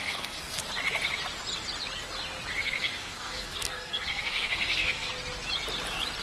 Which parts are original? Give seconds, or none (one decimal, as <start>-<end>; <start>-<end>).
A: 0.6-2.6; 5.1-6.2